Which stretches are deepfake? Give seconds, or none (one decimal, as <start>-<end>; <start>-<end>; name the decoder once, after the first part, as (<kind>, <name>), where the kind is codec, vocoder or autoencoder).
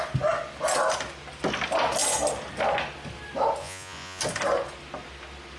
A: 3.6-4.2 (vocoder, Vocos)